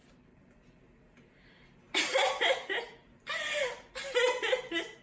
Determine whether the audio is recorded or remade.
recorded